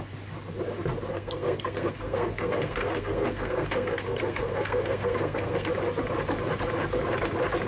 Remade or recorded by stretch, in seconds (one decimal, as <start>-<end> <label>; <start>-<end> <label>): 0.0-1.1 recorded; 1.1-5.7 remade; 5.7-7.7 recorded